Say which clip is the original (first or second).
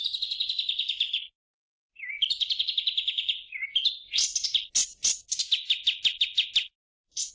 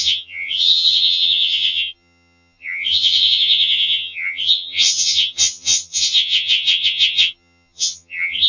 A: first